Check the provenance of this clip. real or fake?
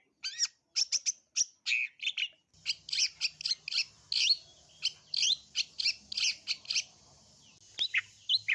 real